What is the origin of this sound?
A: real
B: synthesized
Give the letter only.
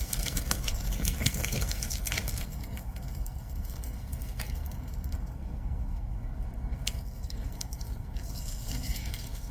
B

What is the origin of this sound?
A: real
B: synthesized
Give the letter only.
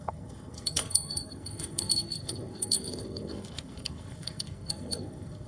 B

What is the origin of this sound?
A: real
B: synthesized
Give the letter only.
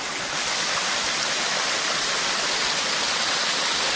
A